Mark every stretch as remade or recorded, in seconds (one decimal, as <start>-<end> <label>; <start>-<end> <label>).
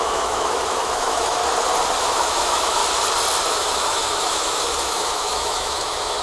0.0-1.4 remade; 1.4-2.0 recorded; 2.0-2.8 remade; 2.8-3.5 recorded; 3.5-6.2 remade